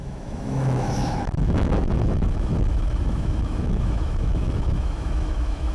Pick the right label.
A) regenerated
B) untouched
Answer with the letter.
A